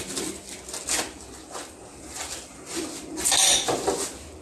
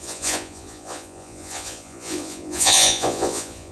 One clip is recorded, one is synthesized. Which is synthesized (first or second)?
second